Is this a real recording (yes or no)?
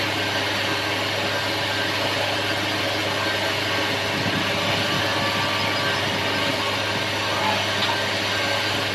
yes